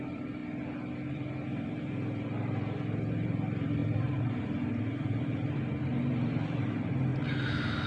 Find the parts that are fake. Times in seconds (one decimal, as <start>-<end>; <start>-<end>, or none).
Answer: 0.0-0.4; 1.1-7.1